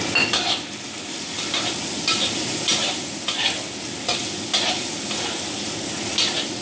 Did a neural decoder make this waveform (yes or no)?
no